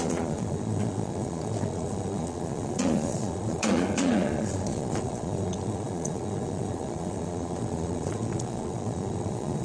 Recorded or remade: remade